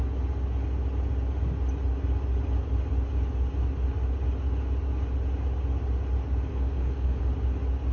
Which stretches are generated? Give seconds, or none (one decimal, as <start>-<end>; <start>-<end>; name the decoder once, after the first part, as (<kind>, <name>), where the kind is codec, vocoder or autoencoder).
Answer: 6.5-7.2 (codec, SNAC)